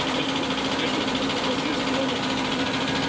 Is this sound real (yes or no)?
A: no